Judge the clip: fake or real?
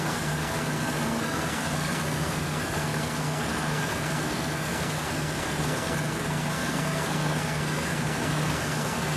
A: fake